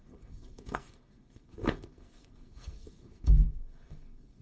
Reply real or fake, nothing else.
fake